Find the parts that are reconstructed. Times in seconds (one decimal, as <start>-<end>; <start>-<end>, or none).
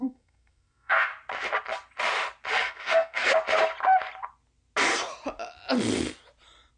0.0-1.1; 2.5-3.3